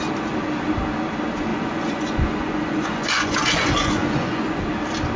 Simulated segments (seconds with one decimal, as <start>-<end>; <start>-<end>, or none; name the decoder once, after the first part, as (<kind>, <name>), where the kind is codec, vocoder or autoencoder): 1.5-4.6 (vocoder, Vocos)

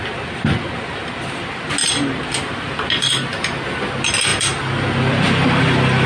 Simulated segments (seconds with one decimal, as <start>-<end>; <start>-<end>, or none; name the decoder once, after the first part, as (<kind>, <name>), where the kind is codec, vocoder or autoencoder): none

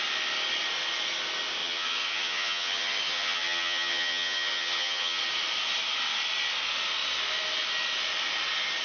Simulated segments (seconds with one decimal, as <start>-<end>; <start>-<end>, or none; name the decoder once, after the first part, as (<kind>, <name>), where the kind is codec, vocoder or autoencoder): 1.6-5.2 (vocoder, HiFi-GAN)

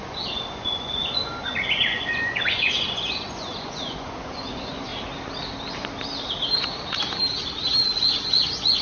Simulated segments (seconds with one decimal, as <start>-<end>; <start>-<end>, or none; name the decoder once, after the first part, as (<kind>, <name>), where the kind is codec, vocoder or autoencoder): 0.0-4.9 (vocoder, Vocos); 8.3-8.8